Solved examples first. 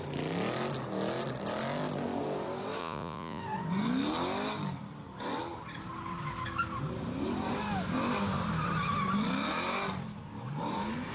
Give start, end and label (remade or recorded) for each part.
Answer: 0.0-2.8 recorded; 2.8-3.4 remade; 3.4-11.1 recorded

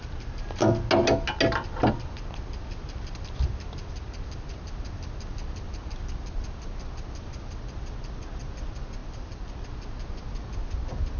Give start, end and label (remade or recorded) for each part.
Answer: 0.0-9.0 recorded; 9.0-9.5 remade; 9.5-11.2 recorded

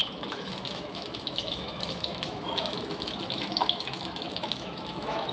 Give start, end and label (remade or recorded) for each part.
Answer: 0.0-5.3 remade

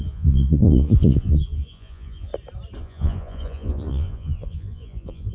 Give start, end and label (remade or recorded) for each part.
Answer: 0.0-2.3 remade; 2.3-2.8 recorded; 2.8-5.3 remade